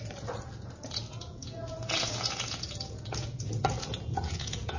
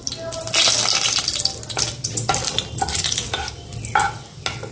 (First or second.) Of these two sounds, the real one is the second